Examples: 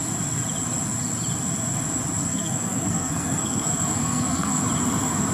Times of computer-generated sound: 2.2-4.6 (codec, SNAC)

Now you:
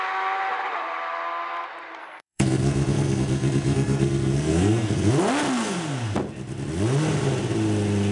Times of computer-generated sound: 2.0-5.1 (codec, SNAC)